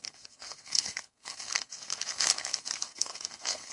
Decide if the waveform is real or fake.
fake